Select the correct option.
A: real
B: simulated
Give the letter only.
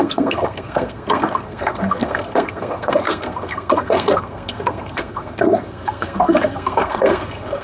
B